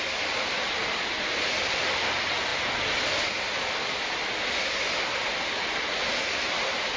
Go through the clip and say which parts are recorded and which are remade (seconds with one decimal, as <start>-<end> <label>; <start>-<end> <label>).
0.0-7.0 recorded